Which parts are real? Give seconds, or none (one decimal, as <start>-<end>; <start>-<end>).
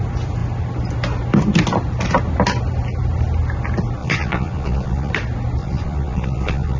0.0-4.0; 5.1-5.6